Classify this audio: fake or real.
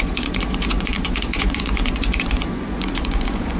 fake